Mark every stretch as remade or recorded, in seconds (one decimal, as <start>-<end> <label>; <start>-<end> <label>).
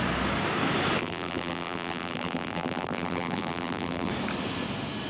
0.0-1.0 recorded; 1.0-4.1 remade; 4.1-5.1 recorded